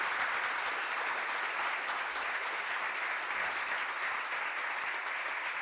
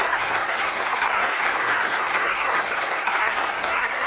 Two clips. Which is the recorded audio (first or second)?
first